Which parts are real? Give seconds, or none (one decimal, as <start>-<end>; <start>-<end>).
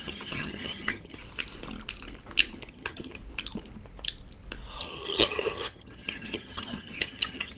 1.2-2.7; 3.2-4.8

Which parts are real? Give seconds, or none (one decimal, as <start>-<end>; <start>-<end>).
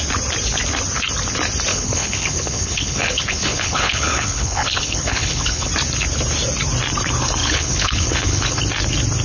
0.0-1.7; 5.7-7.4; 8.6-9.2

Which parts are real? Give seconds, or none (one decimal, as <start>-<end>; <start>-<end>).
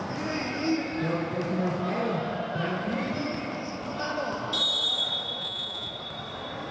0.0-5.4; 5.9-6.7